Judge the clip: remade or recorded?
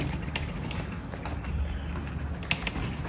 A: recorded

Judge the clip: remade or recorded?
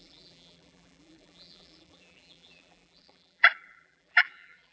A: remade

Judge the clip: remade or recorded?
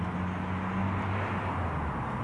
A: recorded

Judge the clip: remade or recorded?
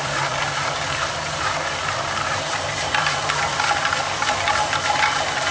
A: remade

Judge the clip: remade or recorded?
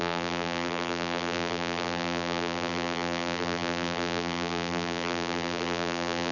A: remade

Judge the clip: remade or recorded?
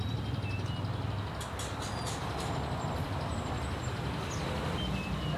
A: recorded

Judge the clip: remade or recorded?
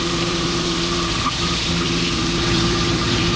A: remade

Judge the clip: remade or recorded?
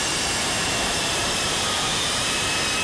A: remade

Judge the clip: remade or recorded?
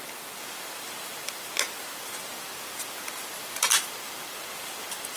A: recorded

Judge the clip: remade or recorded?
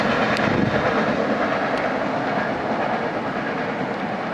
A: recorded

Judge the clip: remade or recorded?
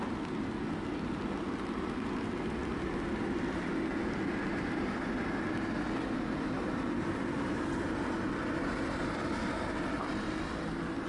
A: recorded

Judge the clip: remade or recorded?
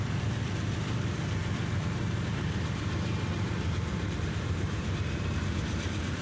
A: remade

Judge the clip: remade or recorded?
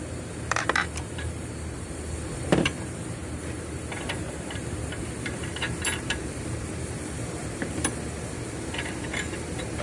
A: remade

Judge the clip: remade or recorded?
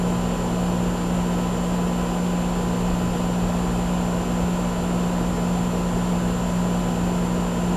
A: recorded